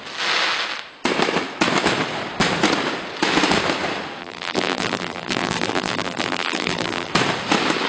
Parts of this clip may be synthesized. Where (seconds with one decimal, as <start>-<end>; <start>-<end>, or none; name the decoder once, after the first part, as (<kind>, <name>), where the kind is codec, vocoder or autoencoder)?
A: 4.2-7.1 (vocoder, BigVGAN v2)